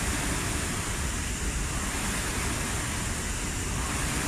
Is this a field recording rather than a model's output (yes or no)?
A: yes